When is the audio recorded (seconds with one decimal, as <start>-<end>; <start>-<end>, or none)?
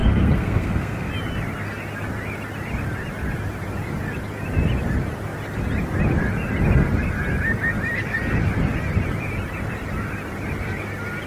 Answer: 1.1-11.3